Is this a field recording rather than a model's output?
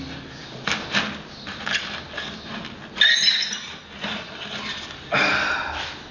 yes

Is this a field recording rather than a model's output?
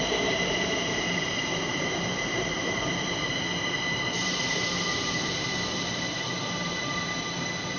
no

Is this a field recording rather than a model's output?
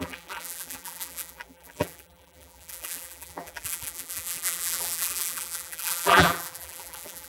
no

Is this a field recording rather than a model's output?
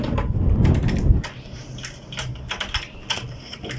yes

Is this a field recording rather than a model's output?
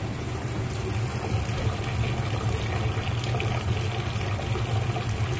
yes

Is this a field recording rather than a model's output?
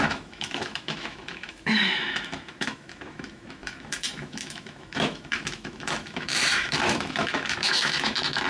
no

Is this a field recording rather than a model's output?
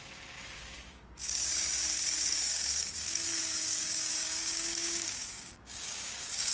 no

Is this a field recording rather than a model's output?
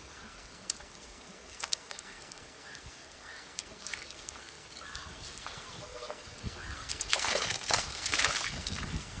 no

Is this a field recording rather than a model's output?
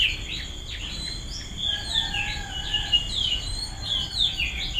yes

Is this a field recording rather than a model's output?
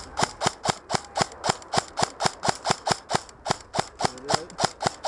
yes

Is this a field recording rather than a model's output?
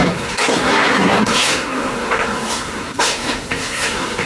no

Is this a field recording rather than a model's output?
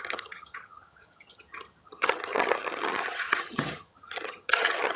no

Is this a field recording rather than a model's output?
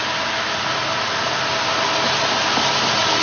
yes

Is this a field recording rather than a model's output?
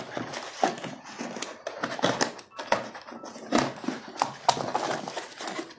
yes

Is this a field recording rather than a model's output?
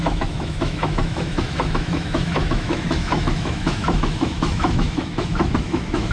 no